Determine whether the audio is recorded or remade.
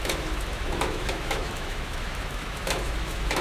remade